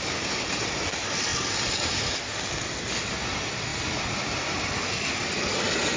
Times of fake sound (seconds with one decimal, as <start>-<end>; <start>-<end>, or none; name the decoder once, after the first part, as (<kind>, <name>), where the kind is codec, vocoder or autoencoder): 1.3-3.1 (vocoder, BigVGAN v2); 3.7-4.4